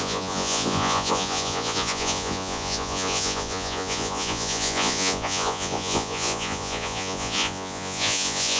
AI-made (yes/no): yes